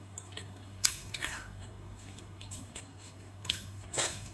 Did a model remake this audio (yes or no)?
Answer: yes